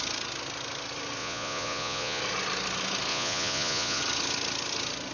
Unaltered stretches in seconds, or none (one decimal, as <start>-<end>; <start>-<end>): 0.0-1.2; 2.2-3.1; 4.0-5.1